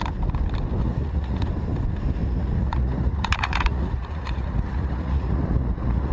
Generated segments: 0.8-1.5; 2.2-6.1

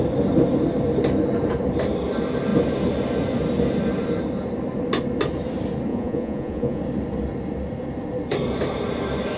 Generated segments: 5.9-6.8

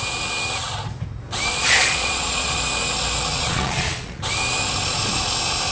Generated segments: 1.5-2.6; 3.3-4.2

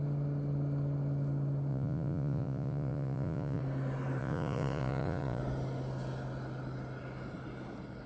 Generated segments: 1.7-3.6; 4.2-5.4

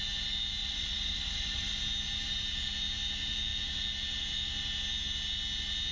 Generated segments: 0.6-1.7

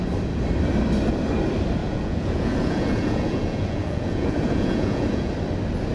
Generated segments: 1.8-5.3

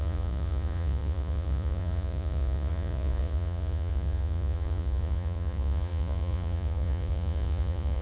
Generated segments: 0.0-8.0